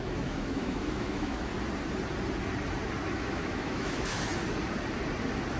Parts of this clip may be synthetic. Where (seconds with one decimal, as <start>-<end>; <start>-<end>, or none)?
0.0-1.5; 3.2-4.3